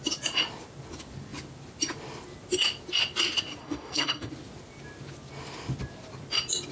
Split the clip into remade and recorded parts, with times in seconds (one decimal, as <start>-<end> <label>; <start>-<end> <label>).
0.0-3.6 recorded; 3.6-4.3 remade; 4.3-6.7 recorded